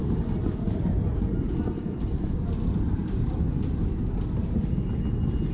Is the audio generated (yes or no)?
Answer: no